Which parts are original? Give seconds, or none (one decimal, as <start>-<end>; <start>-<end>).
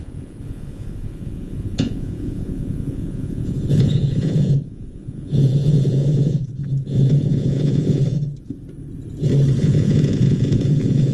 8.0-9.6